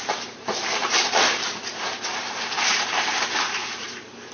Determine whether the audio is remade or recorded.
remade